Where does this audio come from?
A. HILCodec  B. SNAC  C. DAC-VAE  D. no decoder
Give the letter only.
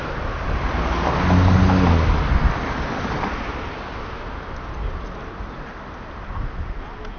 D